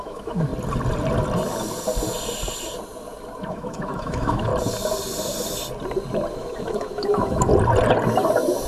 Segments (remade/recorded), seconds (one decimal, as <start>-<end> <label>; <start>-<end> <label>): 0.0-0.5 remade; 0.5-3.5 recorded; 3.5-4.5 remade; 4.5-6.3 recorded; 6.3-7.5 remade; 7.5-8.7 recorded